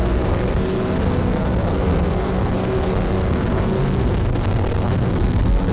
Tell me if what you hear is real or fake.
fake